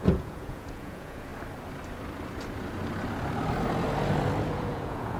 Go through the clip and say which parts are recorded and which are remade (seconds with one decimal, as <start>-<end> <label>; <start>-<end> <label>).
0.0-1.3 remade; 1.3-4.4 recorded; 4.4-5.2 remade